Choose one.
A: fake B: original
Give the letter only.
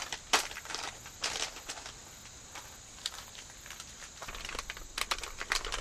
B